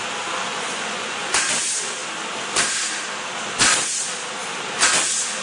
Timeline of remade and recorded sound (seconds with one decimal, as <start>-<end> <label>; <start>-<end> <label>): 0.0-0.5 recorded; 0.5-1.3 remade; 1.3-5.4 recorded